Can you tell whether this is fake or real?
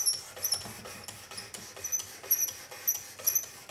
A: real